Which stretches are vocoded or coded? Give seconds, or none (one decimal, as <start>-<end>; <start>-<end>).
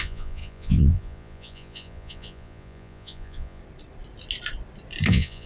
0.0-3.6; 5.1-5.5